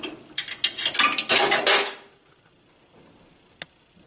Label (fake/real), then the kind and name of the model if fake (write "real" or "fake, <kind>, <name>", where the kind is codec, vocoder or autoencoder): real